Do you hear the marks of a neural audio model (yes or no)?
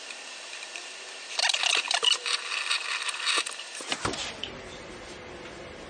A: yes